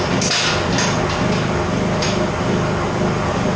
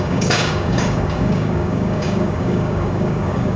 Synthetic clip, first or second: second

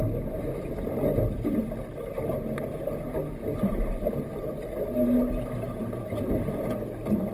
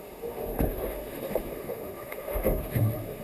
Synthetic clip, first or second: second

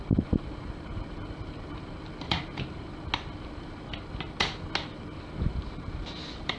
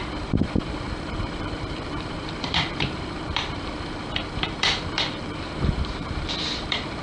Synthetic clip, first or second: second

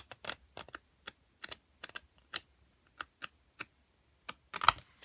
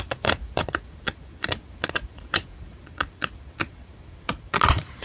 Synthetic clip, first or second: second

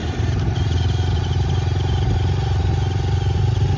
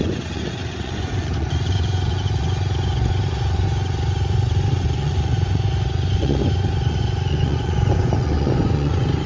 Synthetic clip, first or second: second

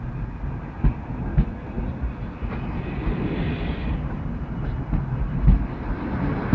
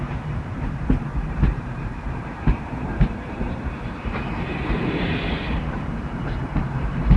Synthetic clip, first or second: second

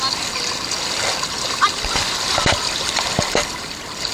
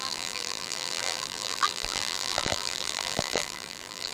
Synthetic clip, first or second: second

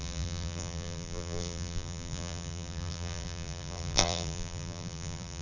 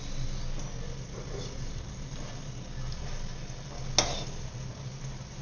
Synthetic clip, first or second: first